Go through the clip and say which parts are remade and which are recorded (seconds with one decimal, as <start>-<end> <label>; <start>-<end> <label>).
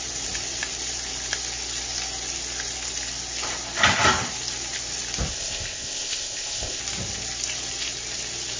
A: 0.0-5.3 recorded; 5.3-6.8 remade; 6.8-8.6 recorded